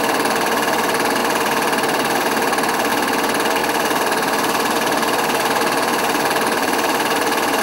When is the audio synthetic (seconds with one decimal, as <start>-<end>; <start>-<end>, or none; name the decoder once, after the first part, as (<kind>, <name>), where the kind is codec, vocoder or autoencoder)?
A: 3.6-7.6 (vocoder, BigVGAN v2)